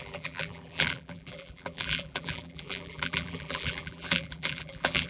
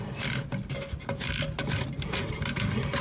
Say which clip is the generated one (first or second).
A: first